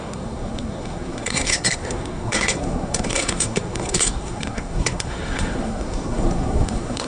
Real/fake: fake